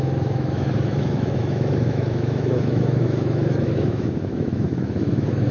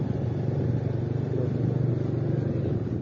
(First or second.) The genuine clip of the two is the second